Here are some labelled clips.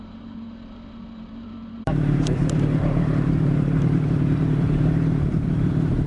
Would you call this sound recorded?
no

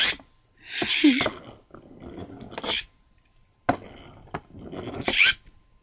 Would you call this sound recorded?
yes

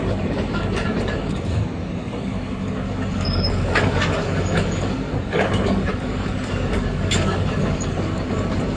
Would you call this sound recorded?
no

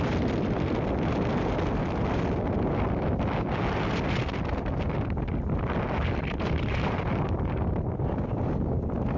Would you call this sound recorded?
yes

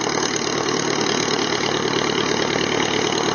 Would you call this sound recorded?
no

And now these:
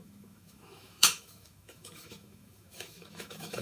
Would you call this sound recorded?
no